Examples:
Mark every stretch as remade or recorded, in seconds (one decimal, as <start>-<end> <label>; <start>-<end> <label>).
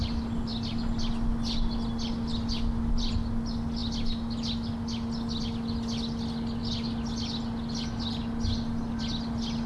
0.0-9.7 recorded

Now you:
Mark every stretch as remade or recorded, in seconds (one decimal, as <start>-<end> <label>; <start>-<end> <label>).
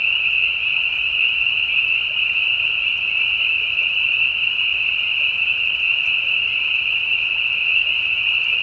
0.0-8.6 recorded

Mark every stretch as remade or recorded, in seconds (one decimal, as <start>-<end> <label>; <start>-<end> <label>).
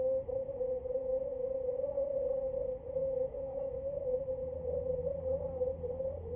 0.0-1.0 recorded; 1.0-1.9 remade; 1.9-3.0 recorded; 3.0-4.2 remade; 4.2-6.4 recorded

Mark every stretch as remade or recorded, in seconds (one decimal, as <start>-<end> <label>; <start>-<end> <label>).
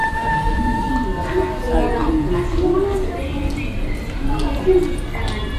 0.0-0.9 remade; 0.9-5.6 recorded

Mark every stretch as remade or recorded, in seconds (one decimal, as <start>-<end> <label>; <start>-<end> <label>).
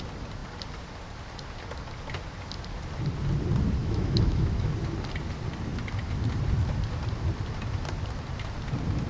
0.0-3.8 recorded; 3.8-4.7 remade; 4.7-9.1 recorded